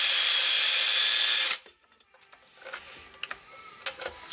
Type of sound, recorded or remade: recorded